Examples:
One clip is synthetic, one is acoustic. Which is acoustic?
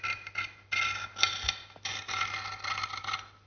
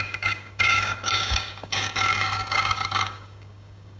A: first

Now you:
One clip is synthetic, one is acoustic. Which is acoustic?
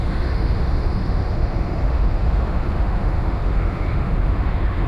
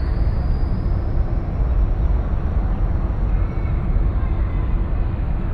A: second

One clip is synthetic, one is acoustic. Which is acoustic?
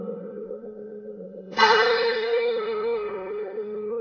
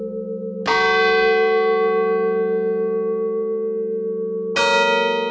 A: second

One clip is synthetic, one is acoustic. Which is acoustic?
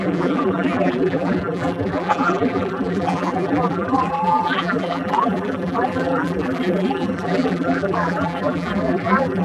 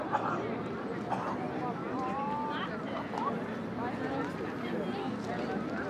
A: second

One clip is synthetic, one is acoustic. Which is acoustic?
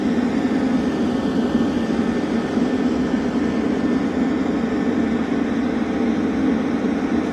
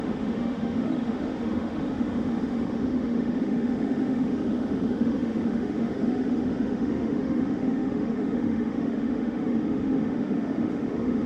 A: first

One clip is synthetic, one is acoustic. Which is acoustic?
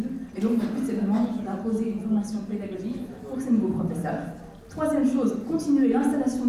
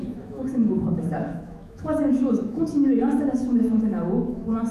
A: first